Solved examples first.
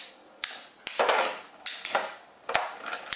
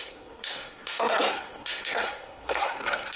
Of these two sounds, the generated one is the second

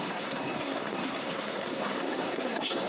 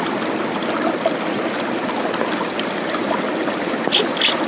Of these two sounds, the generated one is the first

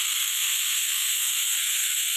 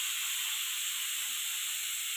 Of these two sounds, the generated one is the first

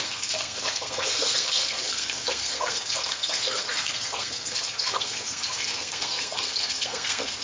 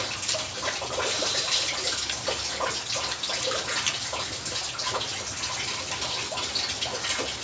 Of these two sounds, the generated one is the first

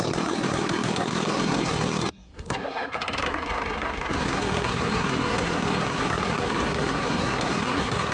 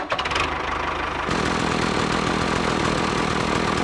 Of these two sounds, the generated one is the first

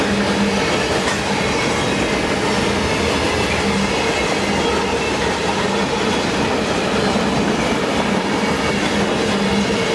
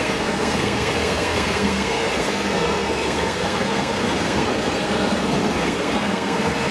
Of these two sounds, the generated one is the second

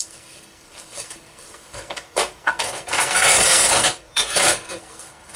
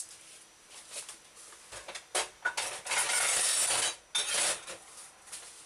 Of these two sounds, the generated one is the first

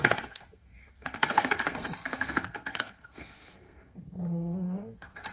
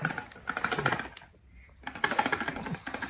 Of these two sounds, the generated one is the first